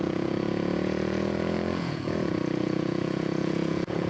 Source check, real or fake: fake